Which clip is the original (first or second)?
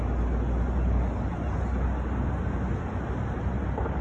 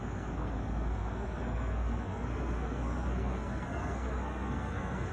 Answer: first